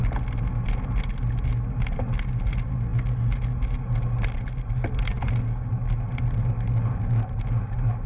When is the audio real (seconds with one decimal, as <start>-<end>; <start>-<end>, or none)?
0.0-8.1